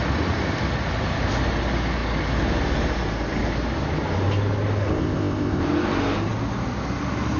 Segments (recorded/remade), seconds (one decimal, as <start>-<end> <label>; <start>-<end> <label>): 0.0-4.9 recorded; 4.9-5.6 remade; 5.6-7.4 recorded